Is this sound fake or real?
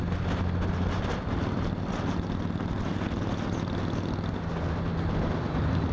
real